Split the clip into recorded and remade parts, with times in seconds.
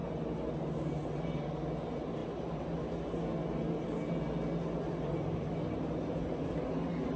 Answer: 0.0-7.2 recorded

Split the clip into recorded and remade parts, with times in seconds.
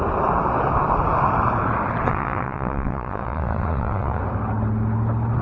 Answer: 0.0-2.1 recorded; 2.1-4.2 remade; 4.2-5.4 recorded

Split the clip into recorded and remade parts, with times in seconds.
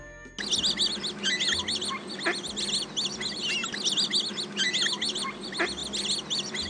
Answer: 0.0-6.7 recorded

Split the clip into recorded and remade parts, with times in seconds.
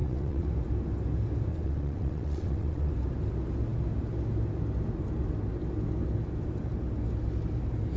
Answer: 0.0-0.5 remade; 0.5-1.5 recorded; 1.5-2.9 remade; 2.9-8.0 recorded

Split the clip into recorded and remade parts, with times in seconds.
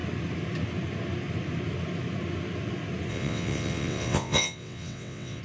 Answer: 0.0-3.1 recorded; 3.1-5.4 remade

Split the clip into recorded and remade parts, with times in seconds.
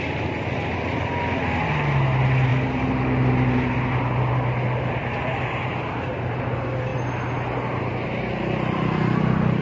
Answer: 0.0-9.6 recorded